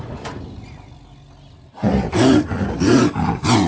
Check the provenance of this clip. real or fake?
real